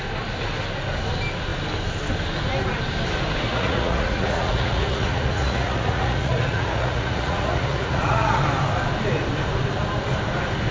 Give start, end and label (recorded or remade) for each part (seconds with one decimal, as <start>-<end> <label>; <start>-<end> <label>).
0.0-3.5 recorded; 3.5-8.4 remade; 8.4-10.7 recorded